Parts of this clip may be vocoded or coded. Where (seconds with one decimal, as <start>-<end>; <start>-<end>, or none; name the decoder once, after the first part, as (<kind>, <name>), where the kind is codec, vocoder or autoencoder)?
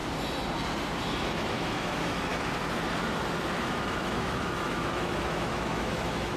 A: 1.2-2.3 (autoencoder, DAC-VAE); 3.6-6.4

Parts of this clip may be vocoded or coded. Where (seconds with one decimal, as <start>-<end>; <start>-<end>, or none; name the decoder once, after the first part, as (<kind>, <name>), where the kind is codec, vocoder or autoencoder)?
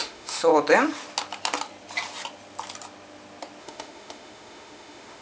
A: 0.0-0.5 (autoencoder, DAC-VAE); 3.6-5.2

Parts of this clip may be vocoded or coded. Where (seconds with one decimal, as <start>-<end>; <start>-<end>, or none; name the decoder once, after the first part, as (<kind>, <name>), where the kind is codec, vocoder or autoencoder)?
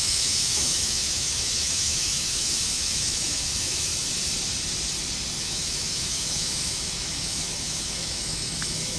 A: 0.0-3.9 (autoencoder, DAC-VAE); 5.4-9.0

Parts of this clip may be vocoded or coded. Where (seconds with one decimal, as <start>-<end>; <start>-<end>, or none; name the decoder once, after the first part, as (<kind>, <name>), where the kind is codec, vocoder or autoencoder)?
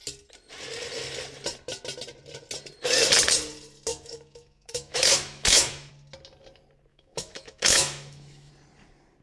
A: 3.9-5.9 (autoencoder, DAC-VAE); 6.9-8.5